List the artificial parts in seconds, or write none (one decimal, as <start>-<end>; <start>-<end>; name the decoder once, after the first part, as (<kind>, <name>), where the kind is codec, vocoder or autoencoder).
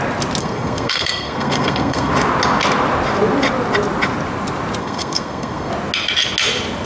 0.4-2.1 (codec, SNAC); 4.8-5.7